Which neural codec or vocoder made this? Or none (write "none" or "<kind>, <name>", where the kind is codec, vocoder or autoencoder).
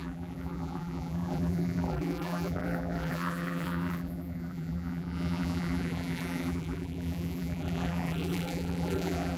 vocoder, BigVGAN v2